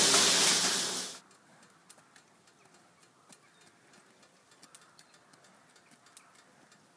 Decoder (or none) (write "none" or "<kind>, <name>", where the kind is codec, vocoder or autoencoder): none